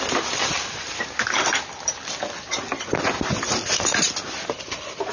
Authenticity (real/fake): real